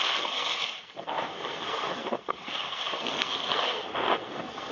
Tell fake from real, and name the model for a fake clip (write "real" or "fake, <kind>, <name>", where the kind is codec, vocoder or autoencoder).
fake, codec, SNAC